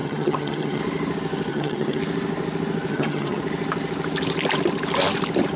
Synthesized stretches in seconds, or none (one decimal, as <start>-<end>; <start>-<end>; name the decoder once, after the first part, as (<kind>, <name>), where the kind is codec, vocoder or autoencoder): 0.0-0.8 (vocoder, HiFi-GAN); 1.5-2.0; 2.9-3.4